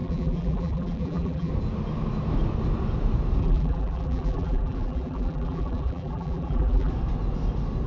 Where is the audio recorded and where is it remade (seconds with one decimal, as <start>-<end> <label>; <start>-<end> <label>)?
0.0-1.5 remade; 1.5-3.4 recorded; 3.4-6.9 remade; 6.9-7.9 recorded